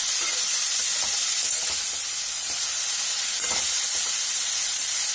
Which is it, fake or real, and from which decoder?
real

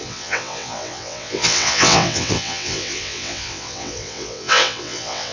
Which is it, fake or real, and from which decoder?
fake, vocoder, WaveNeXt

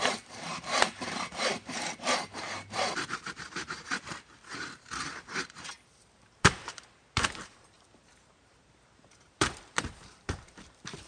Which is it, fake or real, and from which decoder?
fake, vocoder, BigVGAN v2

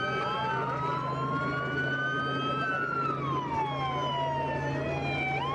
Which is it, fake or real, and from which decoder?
real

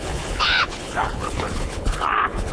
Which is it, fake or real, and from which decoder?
fake, codec, HILCodec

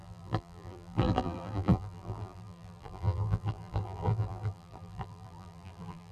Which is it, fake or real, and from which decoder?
fake, vocoder, BigVGAN v2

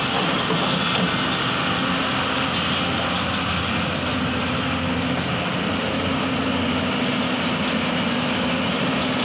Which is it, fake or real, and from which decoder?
real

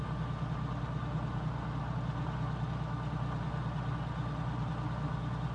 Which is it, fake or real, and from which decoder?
real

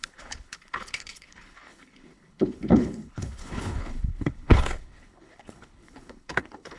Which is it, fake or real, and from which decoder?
fake, codec, HILCodec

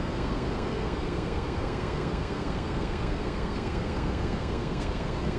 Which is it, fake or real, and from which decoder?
fake, codec, SNAC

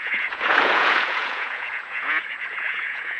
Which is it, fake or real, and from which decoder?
fake, vocoder, Vocos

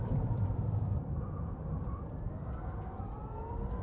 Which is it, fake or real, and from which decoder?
fake, vocoder, BigVGAN v2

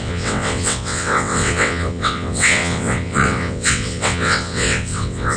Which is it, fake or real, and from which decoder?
fake, vocoder, WaveNeXt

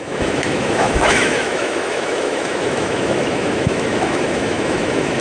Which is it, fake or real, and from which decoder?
fake, autoencoder, DAC-VAE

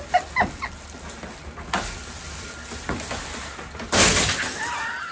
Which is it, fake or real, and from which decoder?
real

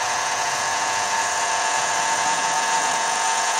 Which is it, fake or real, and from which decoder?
fake, vocoder, Vocos